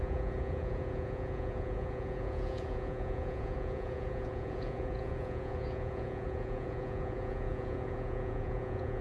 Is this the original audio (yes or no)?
no